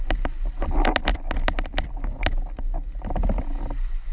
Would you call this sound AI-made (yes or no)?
no